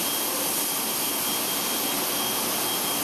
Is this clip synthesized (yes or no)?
no